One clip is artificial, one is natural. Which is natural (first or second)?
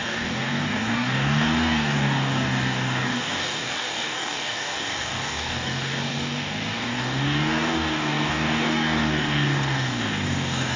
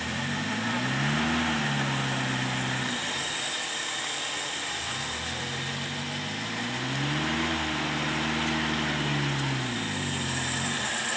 second